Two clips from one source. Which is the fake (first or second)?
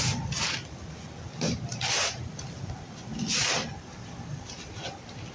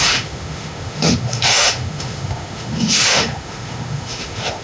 second